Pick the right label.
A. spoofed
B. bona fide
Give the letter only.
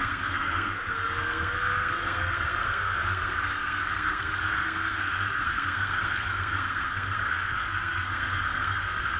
A